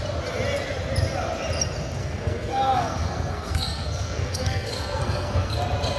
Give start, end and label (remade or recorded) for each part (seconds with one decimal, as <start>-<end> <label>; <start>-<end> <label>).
0.0-2.0 recorded; 2.0-5.6 remade; 5.6-6.0 recorded